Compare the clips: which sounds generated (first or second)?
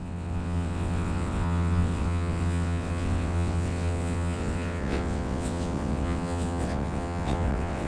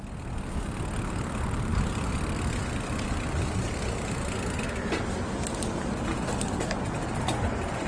first